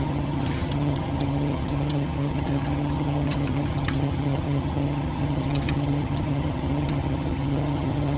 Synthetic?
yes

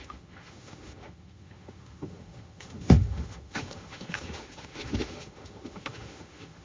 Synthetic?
yes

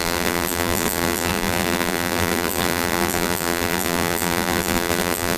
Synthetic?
yes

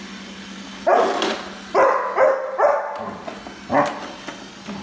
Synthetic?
no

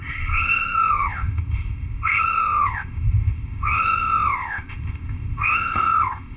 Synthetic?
yes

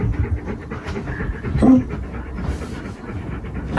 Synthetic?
no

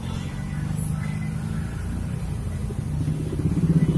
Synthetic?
no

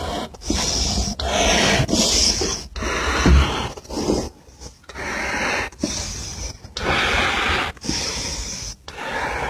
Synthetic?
no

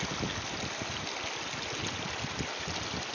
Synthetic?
no